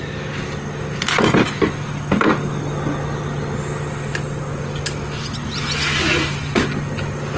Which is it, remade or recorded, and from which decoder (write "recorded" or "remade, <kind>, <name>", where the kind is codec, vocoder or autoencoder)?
recorded